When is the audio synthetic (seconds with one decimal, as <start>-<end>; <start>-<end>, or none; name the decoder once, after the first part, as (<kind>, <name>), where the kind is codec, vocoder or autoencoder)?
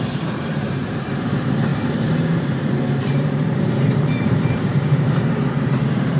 0.0-6.2 (vocoder, BigVGAN v2)